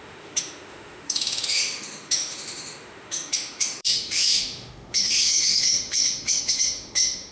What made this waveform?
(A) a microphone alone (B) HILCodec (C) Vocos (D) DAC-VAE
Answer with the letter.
D